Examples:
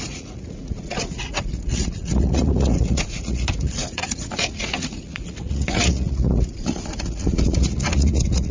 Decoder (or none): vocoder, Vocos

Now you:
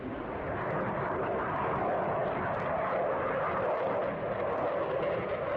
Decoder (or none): none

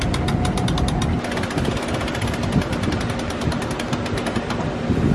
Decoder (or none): none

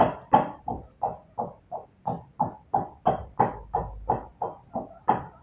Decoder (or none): none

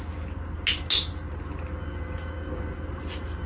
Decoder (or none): none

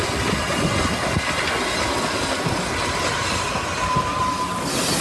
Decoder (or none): none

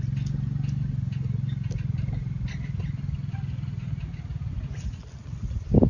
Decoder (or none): none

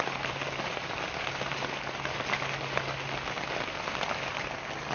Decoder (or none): none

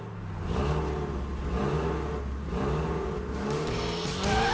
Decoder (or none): none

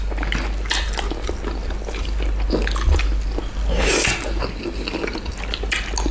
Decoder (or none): none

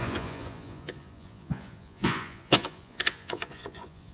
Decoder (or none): vocoder, Vocos